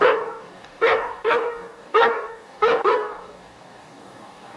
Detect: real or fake fake